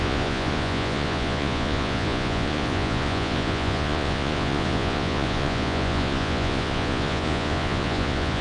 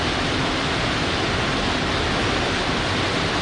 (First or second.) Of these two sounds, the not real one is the first